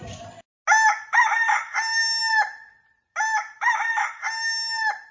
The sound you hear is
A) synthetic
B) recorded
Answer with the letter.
B